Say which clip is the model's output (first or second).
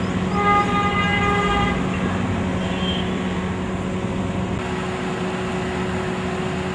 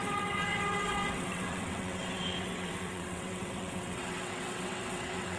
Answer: second